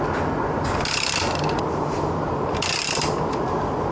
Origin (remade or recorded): recorded